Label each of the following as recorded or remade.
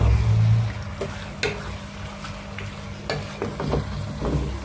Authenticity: recorded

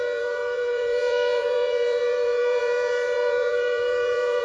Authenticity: remade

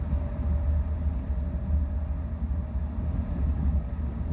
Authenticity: recorded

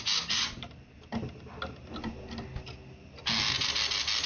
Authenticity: recorded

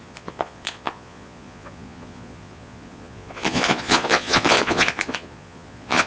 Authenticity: remade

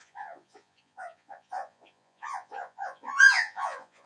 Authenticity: remade